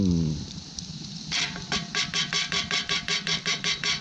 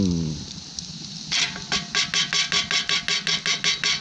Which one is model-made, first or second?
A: first